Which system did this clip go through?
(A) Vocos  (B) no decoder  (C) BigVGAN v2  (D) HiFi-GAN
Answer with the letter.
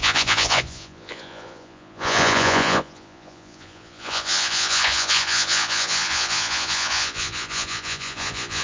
A